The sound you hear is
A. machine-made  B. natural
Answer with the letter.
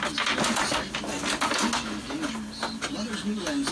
B